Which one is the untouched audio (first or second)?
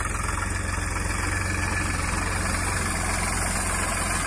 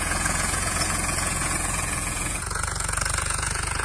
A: first